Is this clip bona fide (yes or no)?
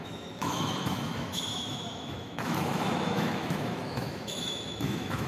no